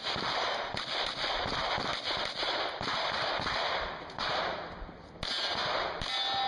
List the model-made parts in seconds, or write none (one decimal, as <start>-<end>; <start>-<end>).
none